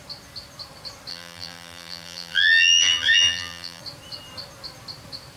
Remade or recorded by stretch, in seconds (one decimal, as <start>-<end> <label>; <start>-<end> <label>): 0.0-1.1 recorded; 1.1-3.8 remade; 3.8-5.4 recorded